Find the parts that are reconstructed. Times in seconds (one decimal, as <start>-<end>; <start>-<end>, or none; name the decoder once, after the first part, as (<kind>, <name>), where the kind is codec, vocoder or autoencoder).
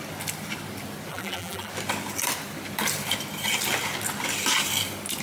1.1-1.7 (vocoder, BigVGAN v2)